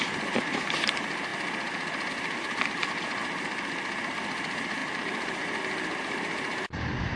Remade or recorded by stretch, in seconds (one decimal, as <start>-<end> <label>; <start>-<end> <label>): 0.0-1.3 remade; 1.3-2.1 recorded; 2.1-3.2 remade; 3.2-4.0 recorded; 4.0-7.2 remade